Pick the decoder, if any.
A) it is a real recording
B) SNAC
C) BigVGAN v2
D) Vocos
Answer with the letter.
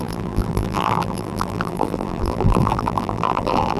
C